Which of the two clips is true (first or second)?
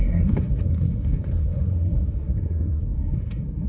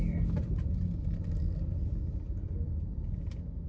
second